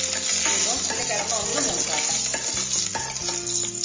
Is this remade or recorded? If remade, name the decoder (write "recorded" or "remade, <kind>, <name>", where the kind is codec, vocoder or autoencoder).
recorded